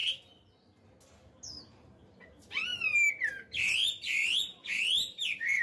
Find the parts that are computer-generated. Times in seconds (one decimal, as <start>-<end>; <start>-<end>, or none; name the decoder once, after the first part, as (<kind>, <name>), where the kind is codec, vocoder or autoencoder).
1.6-5.6 (vocoder, BigVGAN v2)